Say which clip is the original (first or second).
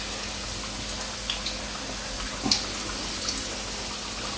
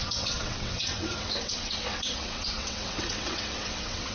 first